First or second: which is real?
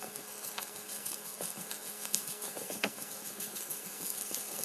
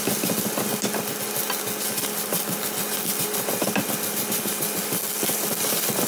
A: second